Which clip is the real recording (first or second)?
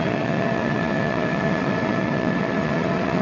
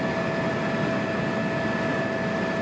second